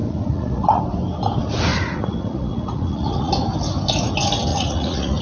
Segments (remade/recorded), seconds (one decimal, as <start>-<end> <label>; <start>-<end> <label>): 0.0-0.8 remade; 0.8-1.7 recorded; 1.7-3.3 remade; 3.3-4.5 recorded; 4.5-5.2 remade